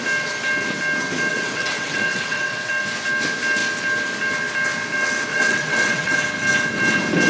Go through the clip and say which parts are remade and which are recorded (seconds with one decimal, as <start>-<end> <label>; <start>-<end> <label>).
0.0-1.3 recorded; 1.3-2.7 remade; 2.7-5.3 recorded; 5.3-6.1 remade; 6.1-7.3 recorded